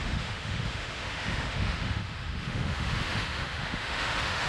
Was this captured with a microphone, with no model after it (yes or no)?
no